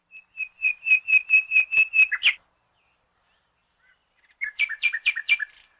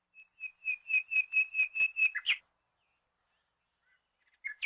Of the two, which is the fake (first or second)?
first